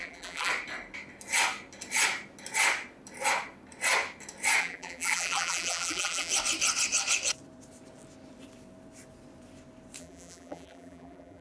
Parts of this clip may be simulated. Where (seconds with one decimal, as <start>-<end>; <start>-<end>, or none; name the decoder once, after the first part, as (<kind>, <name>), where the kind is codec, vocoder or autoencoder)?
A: 0.0-0.5 (vocoder, BigVGAN v2); 4.6-6.3; 10.0-11.4